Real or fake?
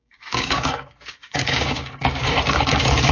fake